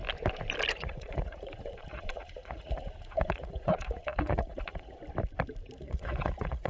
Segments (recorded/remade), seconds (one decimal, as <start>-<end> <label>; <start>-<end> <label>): 0.0-0.7 recorded; 0.7-5.0 remade; 5.0-5.8 recorded; 5.8-6.7 remade